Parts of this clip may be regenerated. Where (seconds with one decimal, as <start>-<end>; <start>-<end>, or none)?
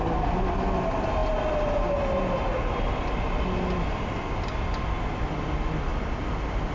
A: none